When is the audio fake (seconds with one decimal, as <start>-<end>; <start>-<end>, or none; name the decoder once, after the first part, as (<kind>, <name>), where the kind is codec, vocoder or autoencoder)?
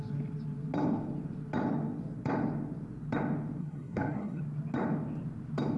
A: 3.6-4.4 (codec, SNAC)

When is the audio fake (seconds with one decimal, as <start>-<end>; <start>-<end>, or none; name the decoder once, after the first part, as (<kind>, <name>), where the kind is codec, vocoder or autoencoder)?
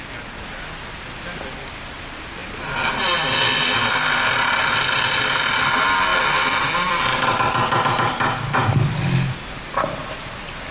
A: none